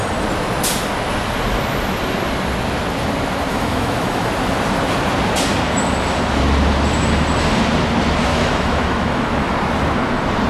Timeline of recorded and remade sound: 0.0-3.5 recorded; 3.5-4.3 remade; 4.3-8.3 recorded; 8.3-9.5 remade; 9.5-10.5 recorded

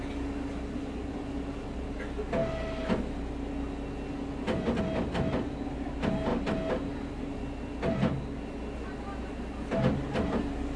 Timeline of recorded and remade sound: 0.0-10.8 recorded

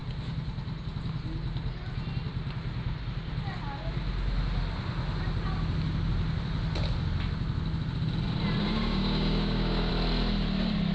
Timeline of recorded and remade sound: 0.0-8.6 recorded; 8.6-9.9 remade; 9.9-10.9 recorded

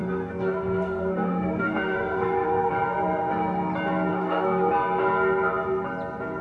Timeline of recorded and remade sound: 0.0-2.7 remade; 2.7-4.1 recorded; 4.1-4.7 remade; 4.7-6.4 recorded

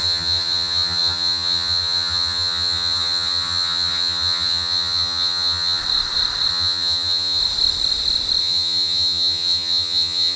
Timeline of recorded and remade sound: 0.0-5.8 remade; 5.8-6.5 recorded; 6.5-7.4 remade; 7.4-8.4 recorded; 8.4-10.4 remade